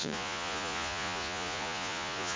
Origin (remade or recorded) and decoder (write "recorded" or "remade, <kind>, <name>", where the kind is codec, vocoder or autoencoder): remade, vocoder, Vocos